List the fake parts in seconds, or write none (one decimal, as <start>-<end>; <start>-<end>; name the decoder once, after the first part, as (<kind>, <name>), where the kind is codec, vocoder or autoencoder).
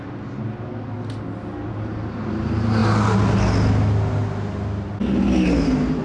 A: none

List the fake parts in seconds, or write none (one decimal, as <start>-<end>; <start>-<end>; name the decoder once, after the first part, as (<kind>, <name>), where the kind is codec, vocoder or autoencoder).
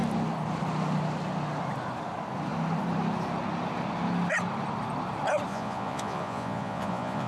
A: 5.5-7.3 (vocoder, Vocos)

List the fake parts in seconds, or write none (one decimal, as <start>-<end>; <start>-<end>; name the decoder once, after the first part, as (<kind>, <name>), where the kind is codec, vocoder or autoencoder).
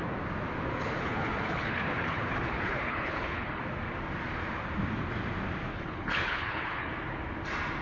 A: 0.8-3.6 (codec, HILCodec); 5.7-6.9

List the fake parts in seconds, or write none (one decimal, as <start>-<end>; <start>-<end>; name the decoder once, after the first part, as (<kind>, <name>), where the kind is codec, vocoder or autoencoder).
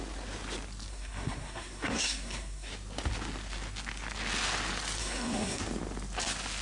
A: 0.9-2.7 (codec, SNAC); 5.0-5.6